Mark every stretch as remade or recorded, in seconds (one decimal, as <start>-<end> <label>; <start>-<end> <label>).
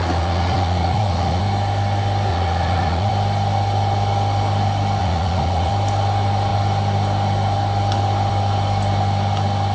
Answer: 0.0-1.4 remade; 1.4-2.3 recorded; 2.3-3.1 remade; 3.1-5.0 recorded; 5.0-5.7 remade; 5.7-9.7 recorded